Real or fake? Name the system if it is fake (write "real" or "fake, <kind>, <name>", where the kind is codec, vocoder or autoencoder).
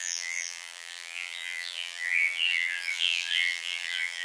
fake, vocoder, BigVGAN v2